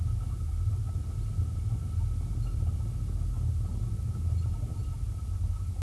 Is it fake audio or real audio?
real